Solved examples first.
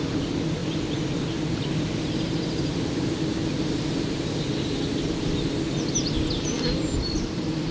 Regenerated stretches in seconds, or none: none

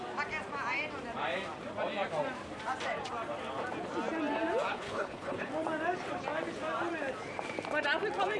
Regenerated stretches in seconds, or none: 4.7-5.5 (codec, HILCodec)

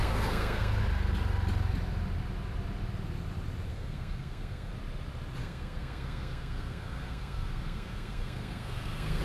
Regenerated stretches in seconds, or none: 0.0-0.8 (codec, SNAC); 3.7-4.7; 5.4-9.2

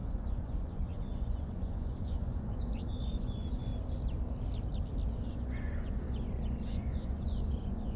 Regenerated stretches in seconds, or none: 0.0-3.7 (vocoder, Vocos); 5.3-8.0

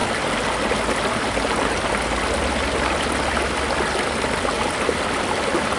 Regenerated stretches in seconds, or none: none